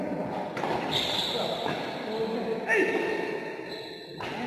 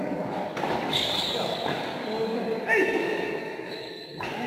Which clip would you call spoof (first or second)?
second